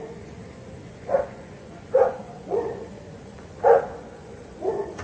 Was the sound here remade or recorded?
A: remade